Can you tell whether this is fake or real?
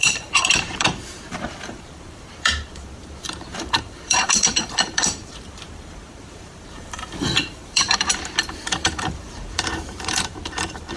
fake